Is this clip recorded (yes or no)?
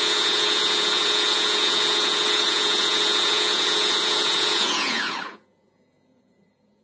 no